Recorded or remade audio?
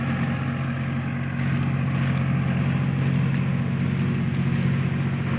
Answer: recorded